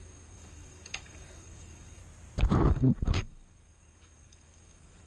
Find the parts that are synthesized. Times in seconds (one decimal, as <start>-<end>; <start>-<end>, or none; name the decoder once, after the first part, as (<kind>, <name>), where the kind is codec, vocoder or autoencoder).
0.0-2.0 (codec, DAC); 2.7-5.1